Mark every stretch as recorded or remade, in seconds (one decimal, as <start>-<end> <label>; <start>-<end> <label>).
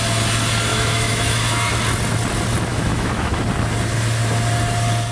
0.0-0.7 recorded; 0.7-1.7 remade; 1.7-2.7 recorded; 2.7-3.4 remade; 3.4-5.1 recorded